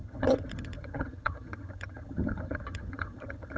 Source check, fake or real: fake